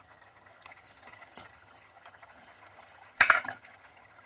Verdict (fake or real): fake